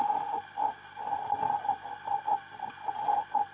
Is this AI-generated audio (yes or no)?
no